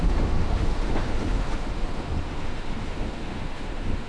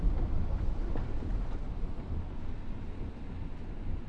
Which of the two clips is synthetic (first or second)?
first